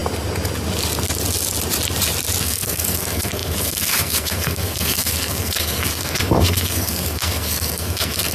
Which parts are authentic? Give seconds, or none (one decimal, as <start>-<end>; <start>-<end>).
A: 0.0-2.4